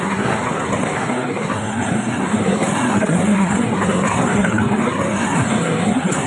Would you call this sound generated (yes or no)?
yes